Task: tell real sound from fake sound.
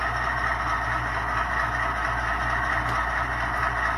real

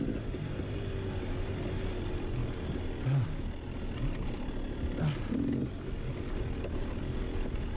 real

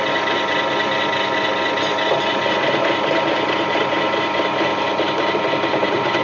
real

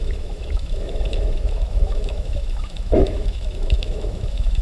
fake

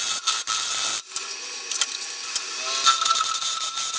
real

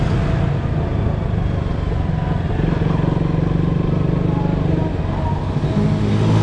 real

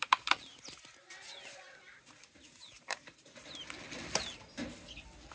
real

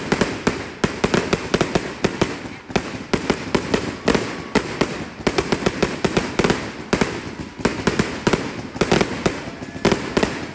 real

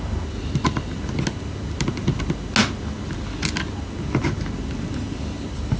real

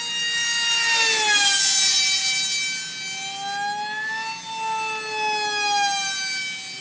real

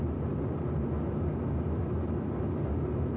real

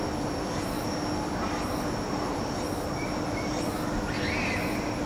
real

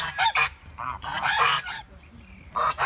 fake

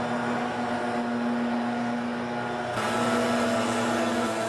real